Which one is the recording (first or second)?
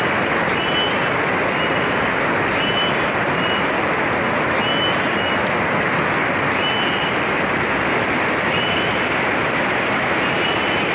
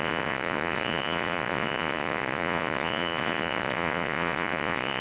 first